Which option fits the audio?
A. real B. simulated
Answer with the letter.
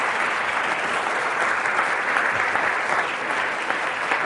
A